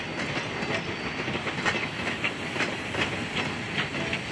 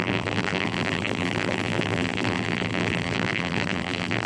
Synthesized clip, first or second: second